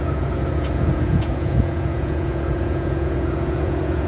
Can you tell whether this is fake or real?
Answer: fake